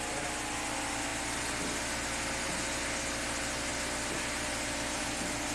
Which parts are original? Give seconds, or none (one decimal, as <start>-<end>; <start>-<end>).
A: 0.0-5.5